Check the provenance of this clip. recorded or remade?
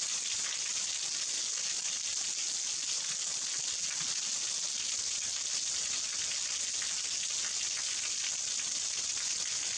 recorded